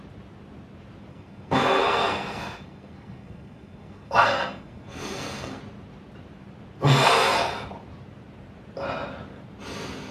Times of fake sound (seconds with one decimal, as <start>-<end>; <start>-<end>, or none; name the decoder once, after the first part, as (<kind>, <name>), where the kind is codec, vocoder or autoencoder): 1.1-5.6 (codec, SNAC); 6.8-7.5